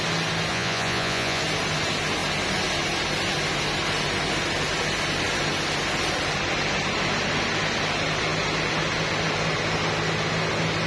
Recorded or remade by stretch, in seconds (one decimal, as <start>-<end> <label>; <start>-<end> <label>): 0.0-0.5 recorded; 0.5-1.4 remade; 1.4-10.9 recorded